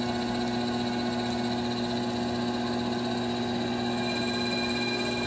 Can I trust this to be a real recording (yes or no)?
yes